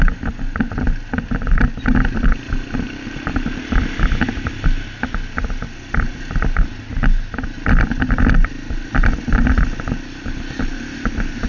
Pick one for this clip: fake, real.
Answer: real